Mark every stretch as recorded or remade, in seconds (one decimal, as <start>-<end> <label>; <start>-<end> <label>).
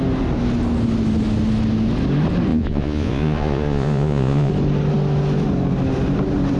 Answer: 0.0-2.5 recorded; 2.5-4.5 remade; 4.5-6.6 recorded